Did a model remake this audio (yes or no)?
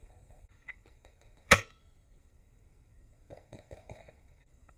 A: yes